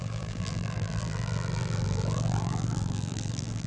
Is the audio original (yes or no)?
no